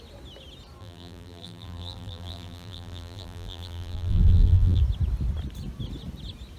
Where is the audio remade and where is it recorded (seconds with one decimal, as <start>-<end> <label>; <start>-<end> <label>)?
0.0-0.8 recorded; 0.8-4.8 remade; 4.8-6.6 recorded